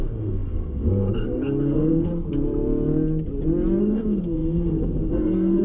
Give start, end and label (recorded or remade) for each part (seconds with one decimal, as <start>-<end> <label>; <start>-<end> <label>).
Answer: 0.0-2.1 remade; 2.1-3.8 recorded; 3.8-5.6 remade